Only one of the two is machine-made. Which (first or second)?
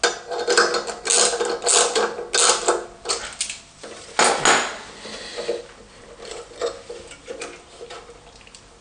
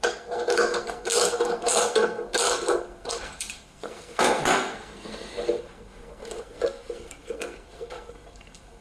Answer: second